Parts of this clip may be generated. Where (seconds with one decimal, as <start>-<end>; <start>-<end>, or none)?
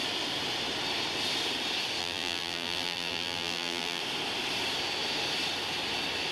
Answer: 2.0-4.0